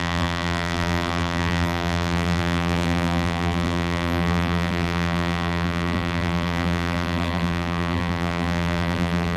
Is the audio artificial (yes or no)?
yes